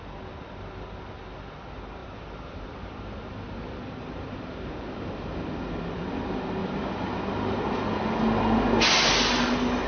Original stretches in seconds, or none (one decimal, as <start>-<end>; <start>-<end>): 0.0-2.0; 5.3-6.6; 7.2-9.9